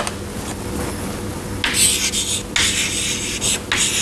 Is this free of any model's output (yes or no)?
yes